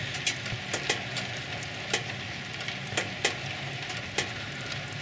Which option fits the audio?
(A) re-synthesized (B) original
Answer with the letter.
B